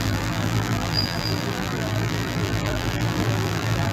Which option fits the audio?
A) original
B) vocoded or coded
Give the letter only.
B